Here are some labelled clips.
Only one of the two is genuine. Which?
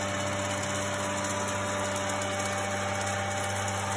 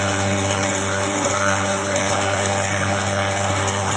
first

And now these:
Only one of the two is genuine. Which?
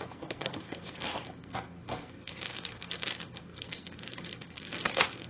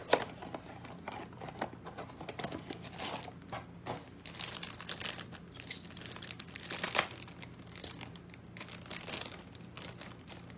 second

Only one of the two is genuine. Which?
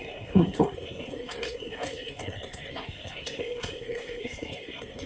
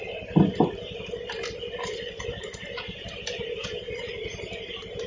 second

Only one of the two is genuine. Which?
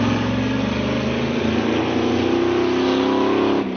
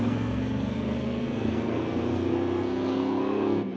first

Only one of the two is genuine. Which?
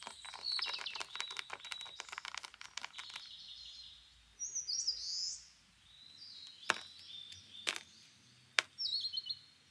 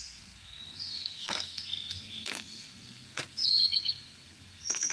first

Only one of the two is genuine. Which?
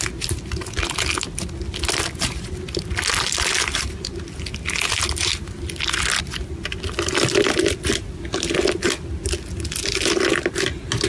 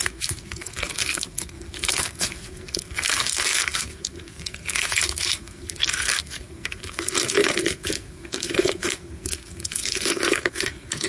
first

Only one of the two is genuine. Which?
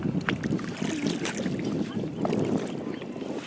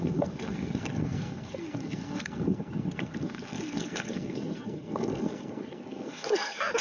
first